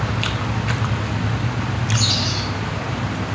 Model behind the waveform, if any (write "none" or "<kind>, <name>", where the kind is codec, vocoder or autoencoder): none